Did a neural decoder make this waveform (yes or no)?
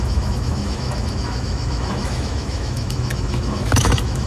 yes